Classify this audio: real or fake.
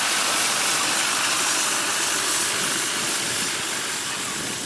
real